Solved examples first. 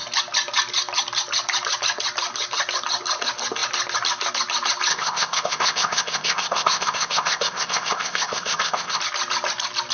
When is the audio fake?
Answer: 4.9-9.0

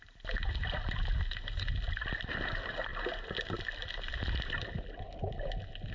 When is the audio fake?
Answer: none

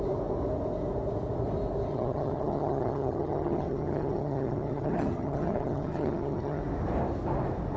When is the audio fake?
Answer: 1.9-6.6

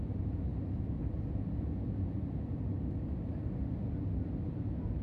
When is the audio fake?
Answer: none

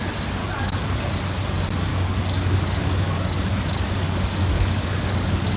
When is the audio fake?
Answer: 0.4-1.0; 1.9-5.6

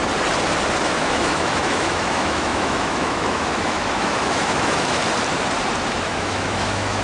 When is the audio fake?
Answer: 0.8-5.0; 6.0-7.0

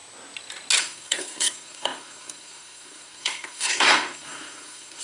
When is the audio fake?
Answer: 0.8-5.0